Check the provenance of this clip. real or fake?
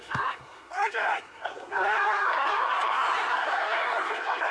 fake